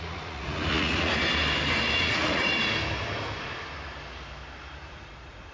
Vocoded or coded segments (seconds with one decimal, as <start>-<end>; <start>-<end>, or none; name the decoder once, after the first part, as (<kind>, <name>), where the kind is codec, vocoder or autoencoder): 0.0-1.1 (vocoder, Vocos); 2.0-2.5; 4.9-5.5